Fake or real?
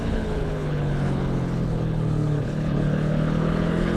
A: fake